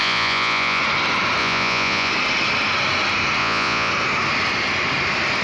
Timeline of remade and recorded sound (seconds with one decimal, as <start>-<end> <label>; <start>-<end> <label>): 0.0-0.8 remade; 0.8-1.4 recorded; 1.4-2.1 remade; 2.1-3.4 recorded; 3.4-3.9 remade; 3.9-5.4 recorded

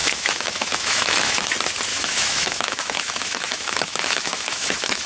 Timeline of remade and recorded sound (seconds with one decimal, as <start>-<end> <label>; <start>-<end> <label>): 0.0-1.5 remade; 1.5-1.9 recorded; 1.9-5.1 remade